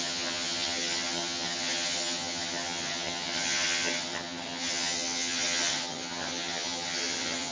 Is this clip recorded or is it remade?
remade